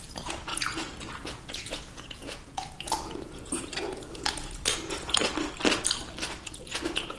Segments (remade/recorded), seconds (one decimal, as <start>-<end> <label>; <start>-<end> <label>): 0.0-5.2 remade; 5.2-6.4 recorded; 6.4-7.2 remade